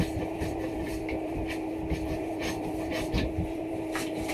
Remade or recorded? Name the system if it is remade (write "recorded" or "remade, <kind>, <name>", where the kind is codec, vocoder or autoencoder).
remade, vocoder, BigVGAN v2